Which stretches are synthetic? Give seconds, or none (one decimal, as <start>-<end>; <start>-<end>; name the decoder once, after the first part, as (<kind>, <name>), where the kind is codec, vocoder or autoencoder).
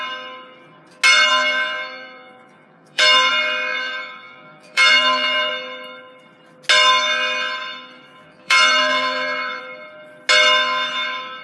1.3-3.3 (vocoder, BigVGAN v2); 3.7-5.5; 8.1-9.6